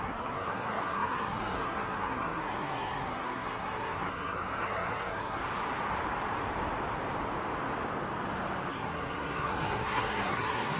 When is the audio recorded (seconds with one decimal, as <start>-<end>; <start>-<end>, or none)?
5.4-8.7